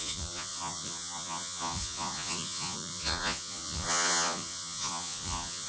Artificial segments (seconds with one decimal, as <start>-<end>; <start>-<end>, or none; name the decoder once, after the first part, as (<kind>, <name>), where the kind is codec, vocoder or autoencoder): 0.0-5.7 (vocoder, Vocos)